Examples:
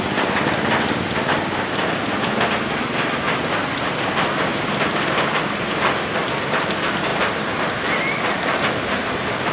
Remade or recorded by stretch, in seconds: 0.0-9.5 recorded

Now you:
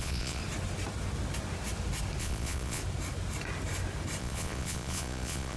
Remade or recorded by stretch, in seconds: 0.0-0.4 remade; 0.4-2.2 recorded; 2.2-2.8 remade; 2.8-4.2 recorded; 4.2-5.6 remade

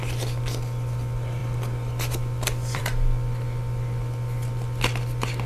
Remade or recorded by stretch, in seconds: 0.0-5.5 recorded

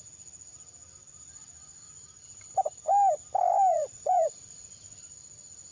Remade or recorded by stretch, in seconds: 0.0-3.7 recorded; 3.7-5.0 remade; 5.0-5.7 recorded

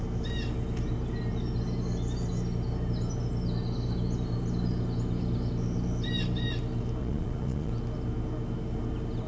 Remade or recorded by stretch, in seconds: 0.0-7.0 recorded; 7.0-7.7 remade; 7.7-9.3 recorded

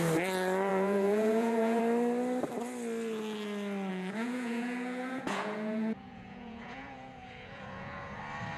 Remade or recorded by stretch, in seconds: 0.0-0.7 recorded; 0.7-1.8 remade; 1.8-3.9 recorded; 3.9-8.2 remade; 8.2-8.6 recorded

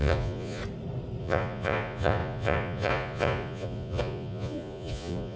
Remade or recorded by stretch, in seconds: 0.0-0.6 remade; 0.6-1.2 recorded; 1.2-5.4 remade